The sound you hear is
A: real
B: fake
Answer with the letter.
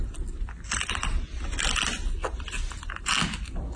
A